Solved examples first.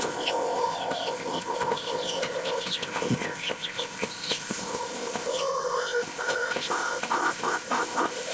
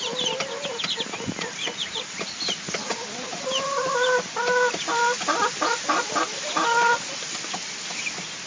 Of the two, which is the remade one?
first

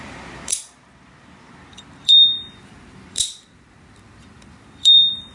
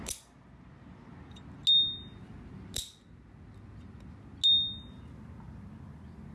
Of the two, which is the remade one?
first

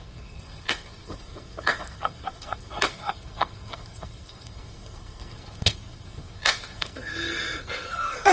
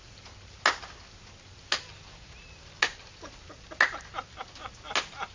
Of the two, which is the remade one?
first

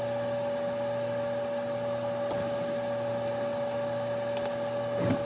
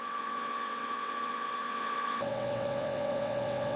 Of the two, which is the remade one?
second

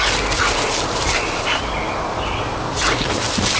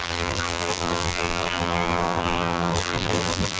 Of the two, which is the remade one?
second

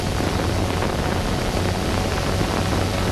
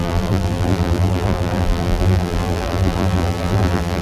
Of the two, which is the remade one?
second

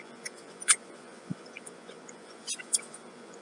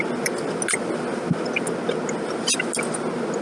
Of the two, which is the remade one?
first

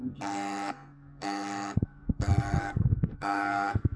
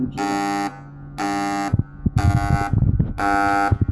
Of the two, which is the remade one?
first